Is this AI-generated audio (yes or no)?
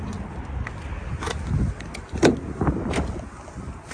no